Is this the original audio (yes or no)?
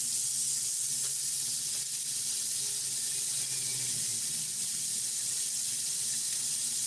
yes